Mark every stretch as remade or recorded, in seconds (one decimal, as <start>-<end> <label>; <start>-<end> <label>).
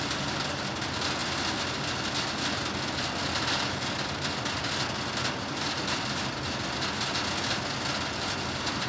0.0-8.9 recorded